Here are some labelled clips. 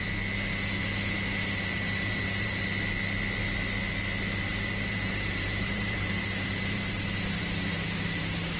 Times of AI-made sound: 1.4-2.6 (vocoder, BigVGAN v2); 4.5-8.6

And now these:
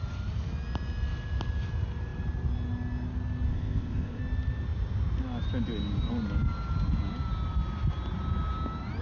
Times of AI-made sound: 3.5-4.2 (codec, ZipCodec)

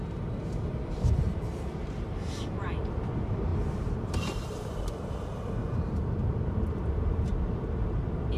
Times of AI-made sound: 0.0-7.3 (vocoder, BigVGAN v2)

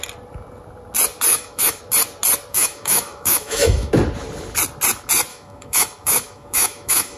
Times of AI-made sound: 1.3-1.8 (autoencoder, DAC-VAE); 2.5-3.9; 5.3-7.2

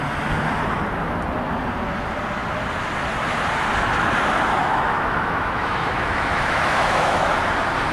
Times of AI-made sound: 4.6-7.3 (autoencoder, DAC-VAE)

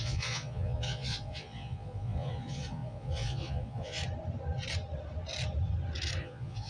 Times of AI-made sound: 0.0-4.0 (vocoder, Vocos); 6.2-6.7